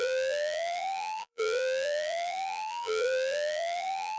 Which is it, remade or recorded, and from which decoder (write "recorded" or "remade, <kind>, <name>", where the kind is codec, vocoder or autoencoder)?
remade, vocoder, BigVGAN v2